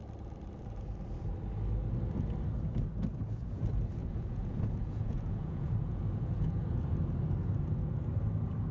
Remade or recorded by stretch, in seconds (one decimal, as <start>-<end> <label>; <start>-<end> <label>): 0.0-3.1 recorded; 3.1-3.6 remade; 3.6-4.0 recorded; 4.0-6.9 remade; 6.9-8.7 recorded